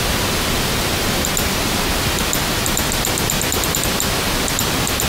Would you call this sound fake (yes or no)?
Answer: no